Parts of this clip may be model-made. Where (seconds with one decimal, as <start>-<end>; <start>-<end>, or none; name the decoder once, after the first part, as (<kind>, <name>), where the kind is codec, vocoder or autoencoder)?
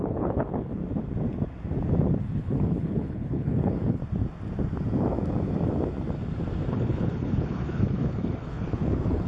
0.0-0.8 (codec, HILCodec); 2.2-4.0; 6.7-9.3